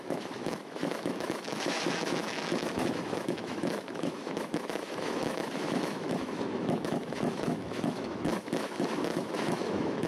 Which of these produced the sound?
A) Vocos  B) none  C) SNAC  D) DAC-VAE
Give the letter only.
D